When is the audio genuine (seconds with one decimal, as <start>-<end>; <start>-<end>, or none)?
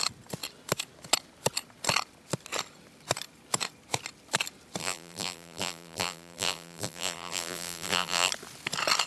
0.0-4.8; 8.3-9.1